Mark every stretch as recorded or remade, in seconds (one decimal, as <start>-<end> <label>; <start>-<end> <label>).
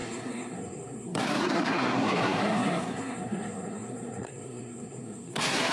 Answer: 0.0-5.7 remade